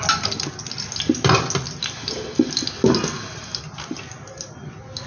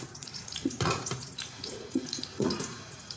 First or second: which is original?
first